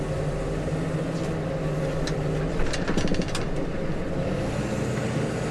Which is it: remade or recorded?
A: recorded